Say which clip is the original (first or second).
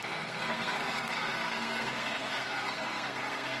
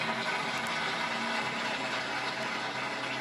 second